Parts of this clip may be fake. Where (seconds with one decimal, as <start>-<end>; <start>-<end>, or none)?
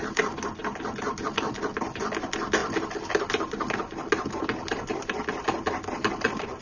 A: none